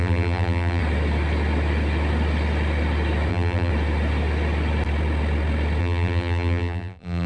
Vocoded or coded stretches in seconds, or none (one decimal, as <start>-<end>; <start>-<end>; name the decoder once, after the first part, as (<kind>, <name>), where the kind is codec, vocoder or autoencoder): 0.0-0.8 (vocoder, BigVGAN v2); 3.3-3.7; 5.8-7.3